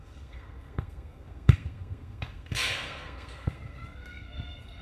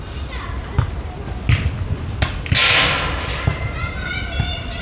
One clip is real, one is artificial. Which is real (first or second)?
second